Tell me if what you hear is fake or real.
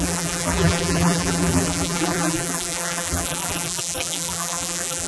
fake